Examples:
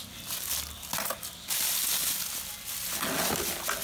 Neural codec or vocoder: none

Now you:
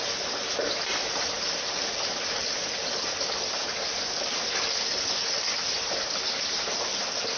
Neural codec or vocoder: none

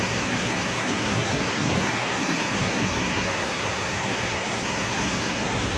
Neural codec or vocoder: codec, SNAC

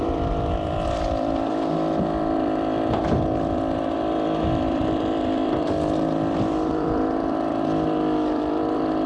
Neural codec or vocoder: vocoder, BigVGAN v2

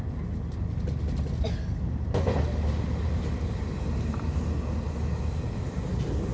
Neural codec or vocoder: none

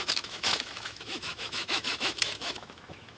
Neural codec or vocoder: autoencoder, DAC-VAE